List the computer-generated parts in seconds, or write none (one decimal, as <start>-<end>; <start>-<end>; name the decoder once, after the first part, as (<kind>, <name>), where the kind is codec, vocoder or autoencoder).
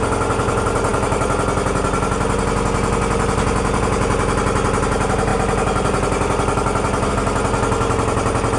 none